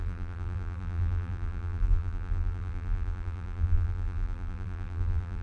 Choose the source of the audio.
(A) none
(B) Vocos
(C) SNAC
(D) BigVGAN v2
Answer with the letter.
D